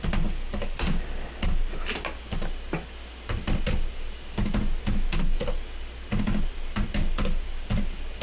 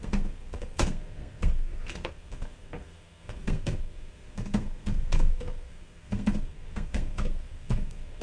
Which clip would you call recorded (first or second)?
first